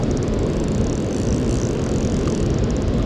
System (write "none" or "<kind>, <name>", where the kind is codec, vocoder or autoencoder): none